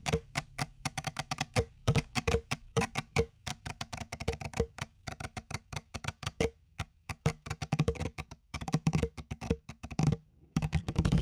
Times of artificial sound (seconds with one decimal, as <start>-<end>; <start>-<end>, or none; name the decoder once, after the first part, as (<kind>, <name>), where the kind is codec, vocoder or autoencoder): 0.0-11.2 (codec, DAC)